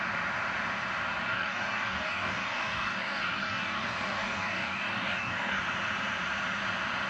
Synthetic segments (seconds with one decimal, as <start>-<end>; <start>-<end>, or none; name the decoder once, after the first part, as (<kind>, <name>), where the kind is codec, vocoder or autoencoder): 1.3-5.6 (codec, DAC)